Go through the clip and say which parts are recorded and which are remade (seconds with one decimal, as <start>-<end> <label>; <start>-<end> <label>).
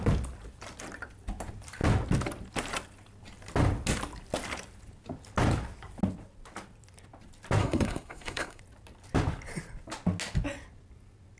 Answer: 0.0-7.6 recorded; 7.6-8.6 remade; 8.6-11.4 recorded